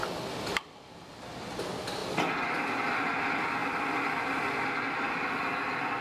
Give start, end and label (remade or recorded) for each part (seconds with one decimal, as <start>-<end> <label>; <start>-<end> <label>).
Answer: 0.0-1.1 remade; 1.1-2.0 recorded; 2.0-2.8 remade; 2.8-6.0 recorded